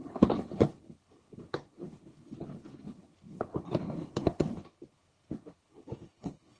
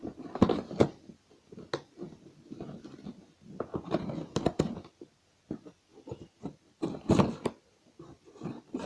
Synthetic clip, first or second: first